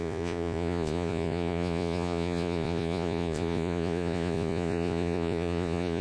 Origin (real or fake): fake